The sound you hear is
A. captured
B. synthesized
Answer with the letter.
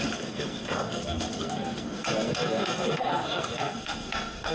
B